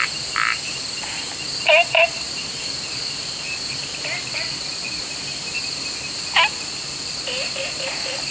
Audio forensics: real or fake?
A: real